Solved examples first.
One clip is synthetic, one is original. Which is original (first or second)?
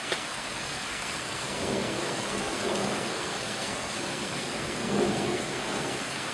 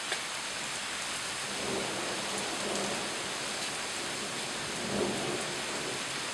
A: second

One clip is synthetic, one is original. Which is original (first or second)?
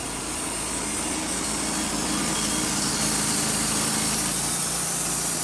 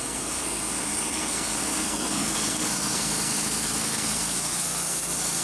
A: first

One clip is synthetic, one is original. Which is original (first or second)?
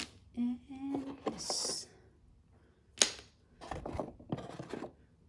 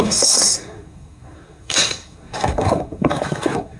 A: first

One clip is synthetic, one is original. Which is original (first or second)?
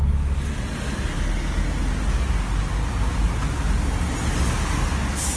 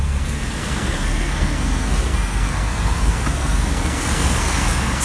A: first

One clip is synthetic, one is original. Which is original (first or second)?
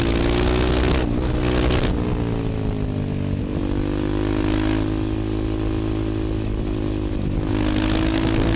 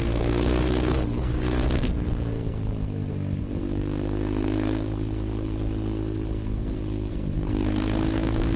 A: first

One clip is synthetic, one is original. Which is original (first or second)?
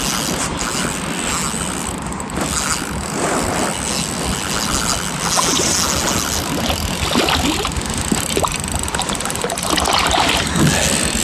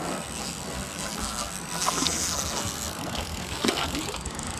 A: first